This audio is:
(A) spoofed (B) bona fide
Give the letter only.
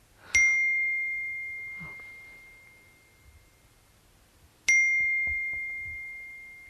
B